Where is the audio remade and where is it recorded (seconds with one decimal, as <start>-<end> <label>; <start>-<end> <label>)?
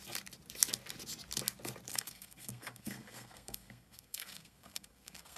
0.0-1.9 recorded; 1.9-5.4 remade